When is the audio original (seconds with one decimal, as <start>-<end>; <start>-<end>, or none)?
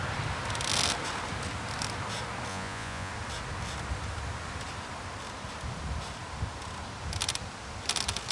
0.0-2.5; 3.1-8.3